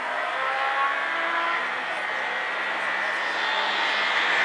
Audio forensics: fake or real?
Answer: real